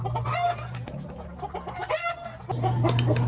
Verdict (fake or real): real